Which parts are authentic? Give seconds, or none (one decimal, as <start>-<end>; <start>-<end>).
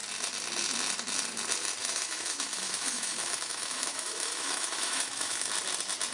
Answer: 0.0-1.8; 5.5-6.1